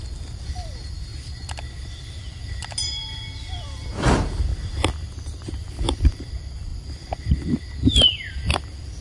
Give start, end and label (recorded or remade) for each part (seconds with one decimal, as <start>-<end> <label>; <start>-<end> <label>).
0.0-1.1 remade; 1.1-1.9 recorded; 1.9-4.5 remade; 4.5-5.2 recorded; 5.2-9.0 remade